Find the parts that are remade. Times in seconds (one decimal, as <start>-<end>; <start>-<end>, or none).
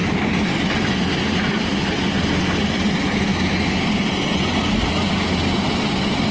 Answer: 3.3-3.9